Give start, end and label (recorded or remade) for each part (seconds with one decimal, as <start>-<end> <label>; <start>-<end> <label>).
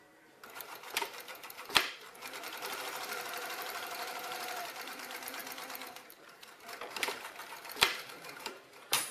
0.0-5.4 remade; 5.4-6.0 recorded; 6.0-9.1 remade